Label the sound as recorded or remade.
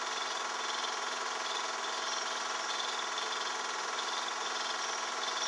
recorded